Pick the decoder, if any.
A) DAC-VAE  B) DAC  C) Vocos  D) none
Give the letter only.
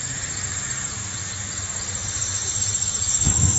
D